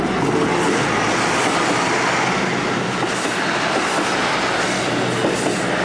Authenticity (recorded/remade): recorded